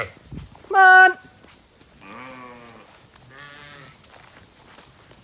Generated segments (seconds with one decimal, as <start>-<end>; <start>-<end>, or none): none